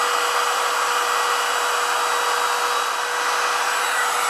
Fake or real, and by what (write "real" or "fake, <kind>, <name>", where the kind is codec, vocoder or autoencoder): real